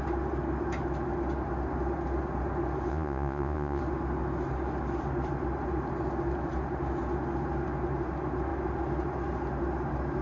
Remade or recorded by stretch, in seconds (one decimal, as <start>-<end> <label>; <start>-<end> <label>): 0.0-2.9 recorded; 2.9-3.8 remade; 3.8-10.2 recorded